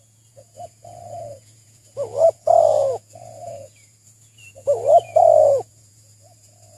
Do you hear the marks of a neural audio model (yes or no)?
yes